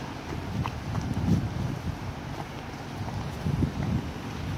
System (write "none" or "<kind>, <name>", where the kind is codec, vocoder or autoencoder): none